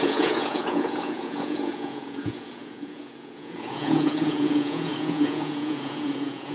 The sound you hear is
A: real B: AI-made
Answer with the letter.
B